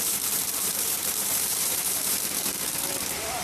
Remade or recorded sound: remade